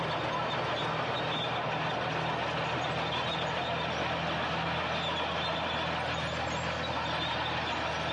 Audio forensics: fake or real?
real